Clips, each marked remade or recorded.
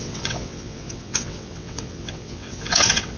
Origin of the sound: remade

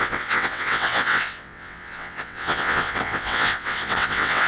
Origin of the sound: remade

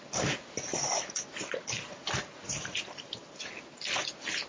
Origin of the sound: recorded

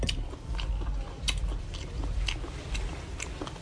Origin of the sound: recorded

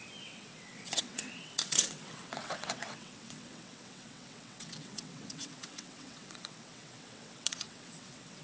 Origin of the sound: remade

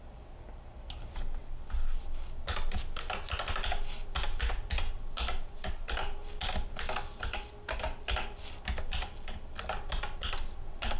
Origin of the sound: recorded